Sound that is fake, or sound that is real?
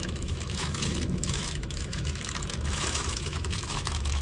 fake